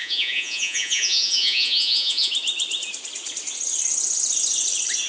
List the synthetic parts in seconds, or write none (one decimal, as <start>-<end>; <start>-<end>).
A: 0.0-2.3